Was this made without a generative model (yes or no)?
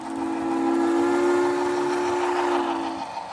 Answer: yes